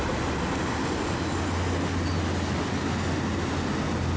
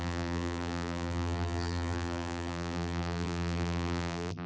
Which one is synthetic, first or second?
second